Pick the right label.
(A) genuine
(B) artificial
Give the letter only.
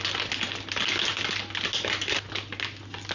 A